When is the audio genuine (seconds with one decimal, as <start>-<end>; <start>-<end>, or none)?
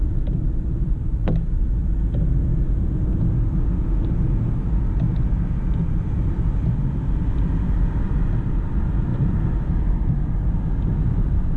2.5-5.8; 9.1-9.7